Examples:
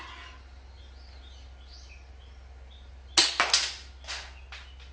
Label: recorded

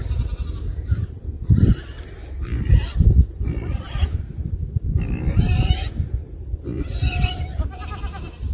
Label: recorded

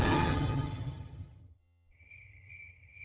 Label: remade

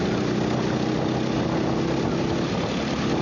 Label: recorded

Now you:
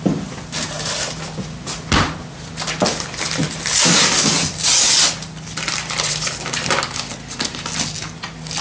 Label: recorded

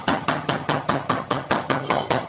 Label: remade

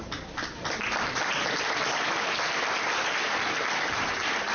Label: recorded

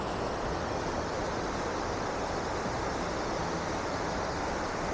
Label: recorded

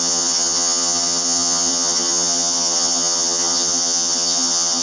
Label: remade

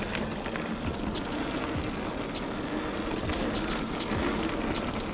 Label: recorded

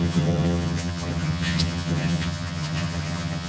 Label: remade